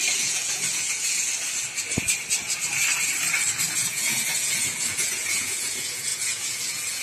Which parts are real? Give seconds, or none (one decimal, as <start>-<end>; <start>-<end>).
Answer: 1.3-3.7

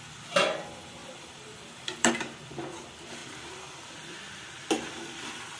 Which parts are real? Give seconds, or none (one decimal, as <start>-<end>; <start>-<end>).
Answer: 0.0-1.0; 2.1-3.2; 3.9-5.6

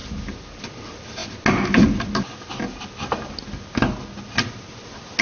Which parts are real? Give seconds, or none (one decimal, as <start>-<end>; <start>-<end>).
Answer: 0.0-5.2

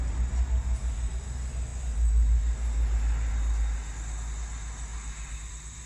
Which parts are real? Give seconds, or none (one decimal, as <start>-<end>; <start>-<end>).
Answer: 0.0-5.9

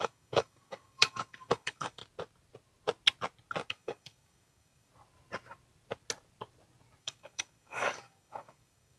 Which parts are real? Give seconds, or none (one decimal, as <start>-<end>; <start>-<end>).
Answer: 2.0-3.7; 4.9-7.0

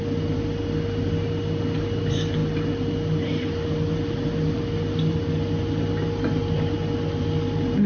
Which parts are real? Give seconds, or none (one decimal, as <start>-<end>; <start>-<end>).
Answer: 0.0-7.9

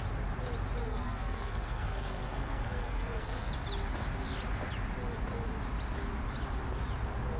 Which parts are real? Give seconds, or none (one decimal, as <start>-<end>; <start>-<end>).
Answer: 0.0-0.8; 3.5-7.4

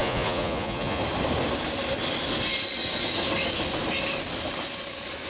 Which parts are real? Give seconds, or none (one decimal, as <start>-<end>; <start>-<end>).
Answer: 1.0-5.3